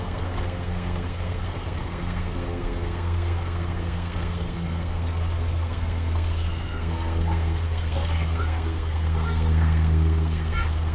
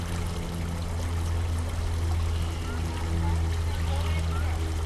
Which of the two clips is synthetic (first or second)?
first